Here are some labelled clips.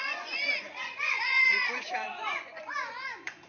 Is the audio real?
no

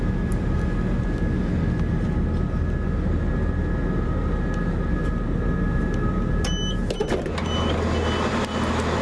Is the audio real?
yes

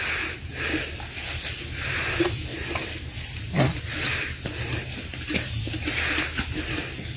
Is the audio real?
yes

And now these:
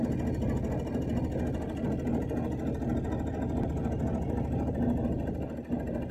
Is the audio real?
yes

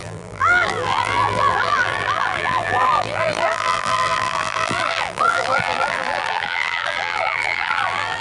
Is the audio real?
no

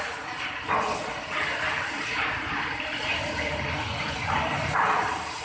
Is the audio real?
yes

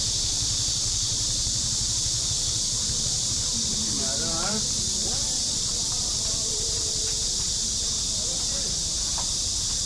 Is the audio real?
no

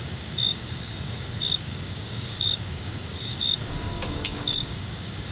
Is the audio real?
no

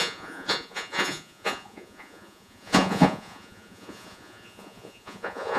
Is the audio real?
no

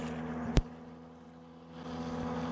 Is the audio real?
yes